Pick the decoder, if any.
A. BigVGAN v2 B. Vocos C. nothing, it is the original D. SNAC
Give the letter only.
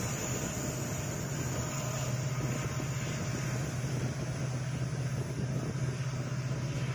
C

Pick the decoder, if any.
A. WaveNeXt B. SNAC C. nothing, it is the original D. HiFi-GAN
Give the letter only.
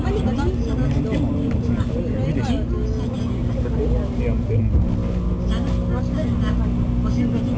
C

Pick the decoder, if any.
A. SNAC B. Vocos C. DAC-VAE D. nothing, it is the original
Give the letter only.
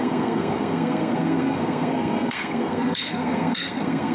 A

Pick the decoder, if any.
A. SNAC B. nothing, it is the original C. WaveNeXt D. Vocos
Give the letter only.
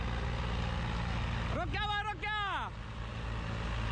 B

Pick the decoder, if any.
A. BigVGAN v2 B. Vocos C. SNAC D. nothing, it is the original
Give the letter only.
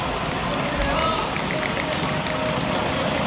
D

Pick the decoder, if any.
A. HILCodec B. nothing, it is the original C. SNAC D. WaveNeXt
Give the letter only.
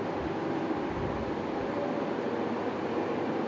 B